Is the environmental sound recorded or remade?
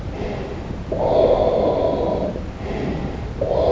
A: recorded